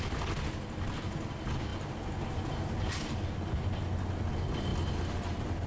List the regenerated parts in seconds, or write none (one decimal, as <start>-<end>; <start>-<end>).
none